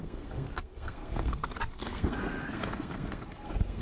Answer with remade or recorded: remade